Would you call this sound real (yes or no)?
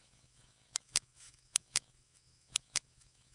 no